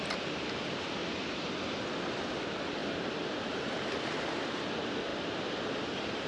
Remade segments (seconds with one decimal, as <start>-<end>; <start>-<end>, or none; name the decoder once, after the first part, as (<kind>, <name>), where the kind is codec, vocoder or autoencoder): 0.0-1.0 (vocoder, BigVGAN v2); 1.8-5.1

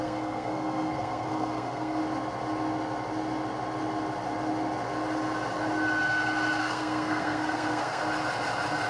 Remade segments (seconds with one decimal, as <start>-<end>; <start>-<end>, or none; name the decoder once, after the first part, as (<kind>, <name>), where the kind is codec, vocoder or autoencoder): 0.0-2.0 (codec, SNAC); 6.6-8.0

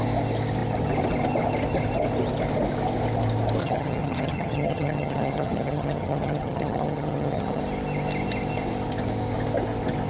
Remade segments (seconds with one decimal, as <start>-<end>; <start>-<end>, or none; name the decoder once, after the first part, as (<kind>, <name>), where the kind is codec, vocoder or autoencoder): 3.6-7.6 (vocoder, HiFi-GAN)